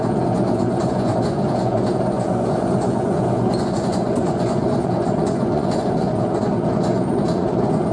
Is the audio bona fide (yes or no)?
no